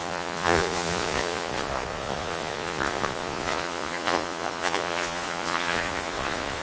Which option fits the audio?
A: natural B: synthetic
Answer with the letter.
B